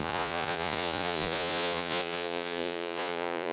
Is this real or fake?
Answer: fake